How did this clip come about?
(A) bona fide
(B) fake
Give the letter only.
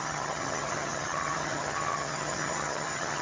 B